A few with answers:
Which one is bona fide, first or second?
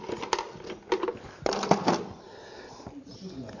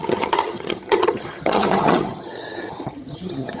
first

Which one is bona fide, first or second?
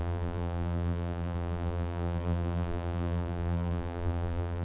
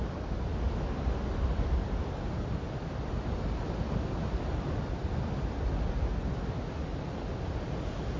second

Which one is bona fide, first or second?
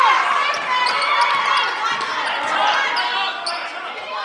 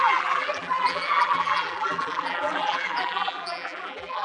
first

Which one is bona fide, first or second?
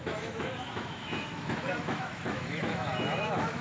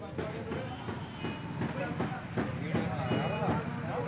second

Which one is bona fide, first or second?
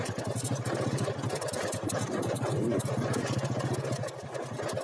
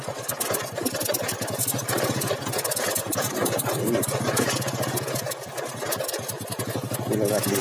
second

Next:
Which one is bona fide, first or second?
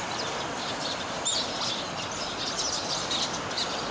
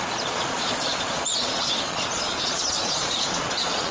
first